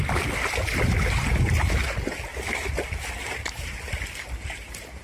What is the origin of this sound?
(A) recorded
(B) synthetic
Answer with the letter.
A